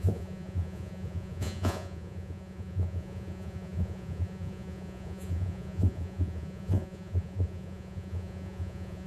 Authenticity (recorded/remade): remade